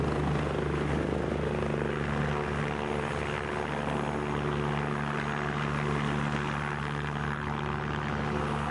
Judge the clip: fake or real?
real